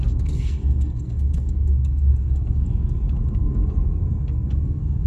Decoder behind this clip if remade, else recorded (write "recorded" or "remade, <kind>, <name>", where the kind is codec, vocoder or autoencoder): remade, codec, SNAC